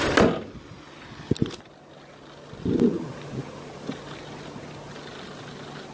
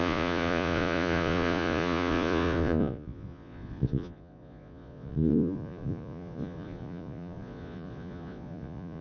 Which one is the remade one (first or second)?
second